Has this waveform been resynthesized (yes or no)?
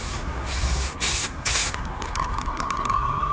yes